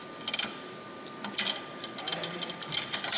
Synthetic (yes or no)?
no